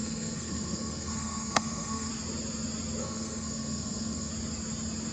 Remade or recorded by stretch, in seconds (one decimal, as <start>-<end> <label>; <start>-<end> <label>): 0.0-2.1 remade; 2.1-3.0 recorded; 3.0-4.3 remade; 4.3-5.1 recorded